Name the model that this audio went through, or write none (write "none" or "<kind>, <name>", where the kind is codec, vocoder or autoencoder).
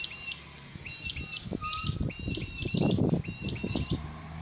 none